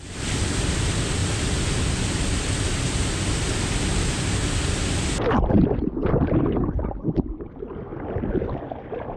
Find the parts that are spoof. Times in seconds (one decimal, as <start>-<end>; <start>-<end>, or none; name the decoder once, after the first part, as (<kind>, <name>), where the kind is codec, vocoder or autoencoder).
7.9-9.2 (vocoder, BigVGAN v2)